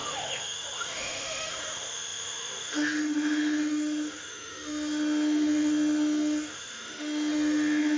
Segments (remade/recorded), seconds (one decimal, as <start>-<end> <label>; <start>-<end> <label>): 0.0-8.0 remade